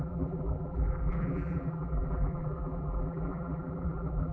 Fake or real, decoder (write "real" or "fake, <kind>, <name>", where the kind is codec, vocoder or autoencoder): fake, vocoder, BigVGAN v2